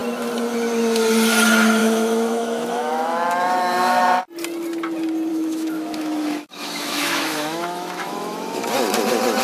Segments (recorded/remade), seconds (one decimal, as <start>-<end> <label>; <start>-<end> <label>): 0.0-1.8 recorded; 1.8-4.2 remade; 4.2-5.3 recorded; 5.3-8.7 remade; 8.7-9.4 recorded